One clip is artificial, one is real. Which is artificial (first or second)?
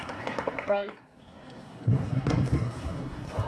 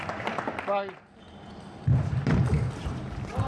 first